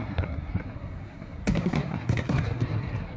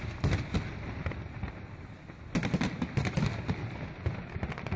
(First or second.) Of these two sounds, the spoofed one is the first